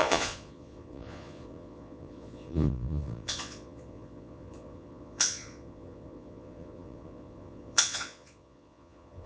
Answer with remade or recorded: remade